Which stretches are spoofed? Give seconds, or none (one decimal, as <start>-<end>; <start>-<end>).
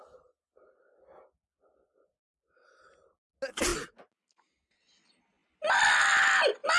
none